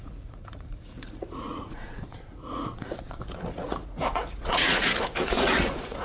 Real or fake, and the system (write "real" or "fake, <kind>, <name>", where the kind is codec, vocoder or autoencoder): fake, vocoder, Vocos